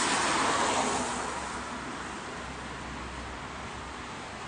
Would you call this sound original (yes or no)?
yes